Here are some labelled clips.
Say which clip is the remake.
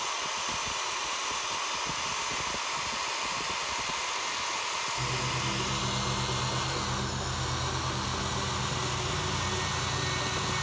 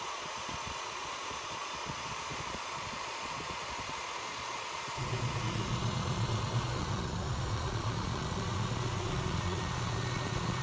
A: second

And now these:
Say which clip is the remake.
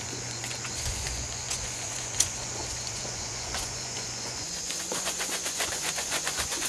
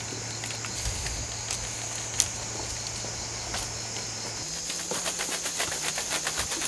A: first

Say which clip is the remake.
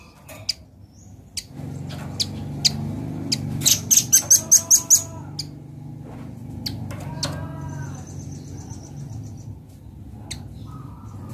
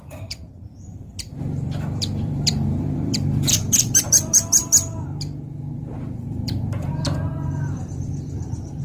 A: second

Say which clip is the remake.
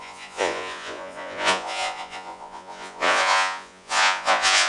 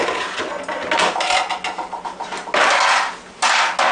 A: first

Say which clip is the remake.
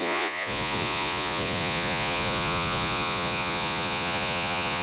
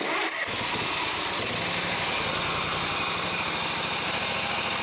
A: first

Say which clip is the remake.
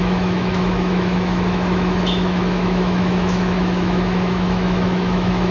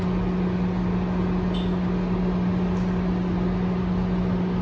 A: first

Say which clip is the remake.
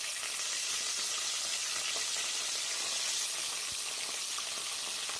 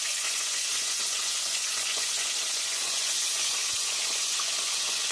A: second